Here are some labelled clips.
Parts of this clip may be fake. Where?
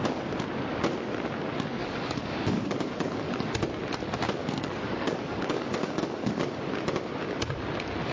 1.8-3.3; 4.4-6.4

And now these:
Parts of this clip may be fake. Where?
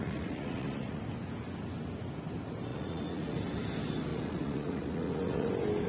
0.0-1.0; 2.7-3.4; 4.1-5.5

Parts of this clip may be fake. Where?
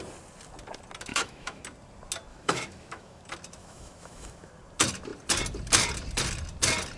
1.1-1.6; 2.3-3.2; 3.6-4.5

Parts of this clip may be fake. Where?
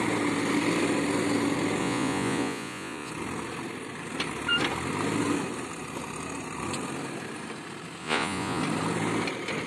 1.8-3.1; 8.0-8.6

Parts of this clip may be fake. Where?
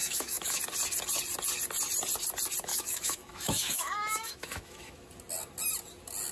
0.0-0.6; 2.7-5.1